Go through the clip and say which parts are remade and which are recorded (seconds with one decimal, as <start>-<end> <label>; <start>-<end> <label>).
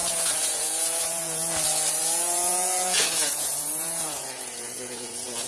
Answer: 0.0-1.5 remade; 1.5-2.0 recorded; 2.0-5.5 remade